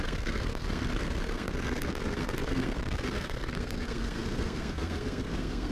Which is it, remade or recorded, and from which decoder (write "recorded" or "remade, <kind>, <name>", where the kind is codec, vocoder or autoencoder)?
remade, codec, SNAC